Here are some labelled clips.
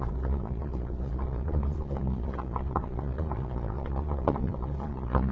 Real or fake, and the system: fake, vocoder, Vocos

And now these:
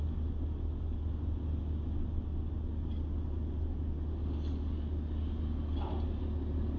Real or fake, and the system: real